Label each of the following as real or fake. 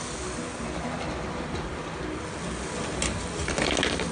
real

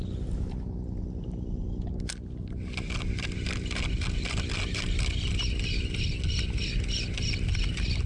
real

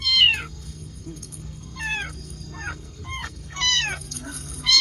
fake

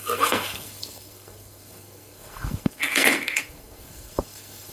fake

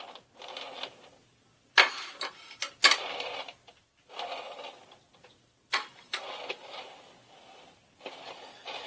real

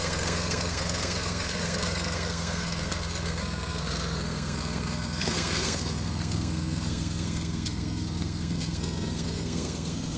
fake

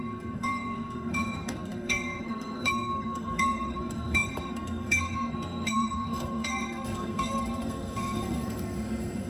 fake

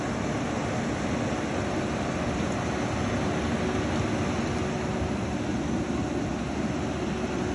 real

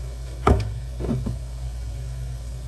fake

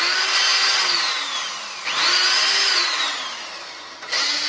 real